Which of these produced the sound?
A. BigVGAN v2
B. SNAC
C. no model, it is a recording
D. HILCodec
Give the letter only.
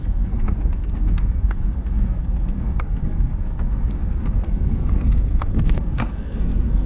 B